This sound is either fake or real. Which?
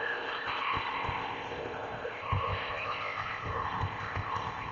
fake